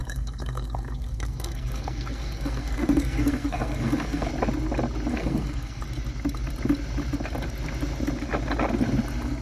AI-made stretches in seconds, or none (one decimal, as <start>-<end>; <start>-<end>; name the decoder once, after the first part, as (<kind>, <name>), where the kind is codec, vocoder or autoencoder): 0.0-4.3 (codec, SNAC); 5.1-5.8

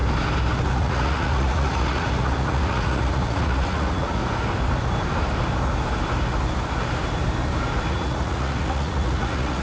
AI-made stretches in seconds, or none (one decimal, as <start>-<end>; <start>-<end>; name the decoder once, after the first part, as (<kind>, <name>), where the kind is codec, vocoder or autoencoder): 0.7-4.2 (vocoder, Vocos); 7.9-9.6